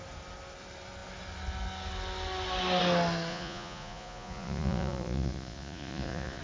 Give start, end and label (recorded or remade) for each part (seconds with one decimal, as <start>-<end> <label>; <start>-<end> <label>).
0.0-3.3 recorded; 3.3-6.4 remade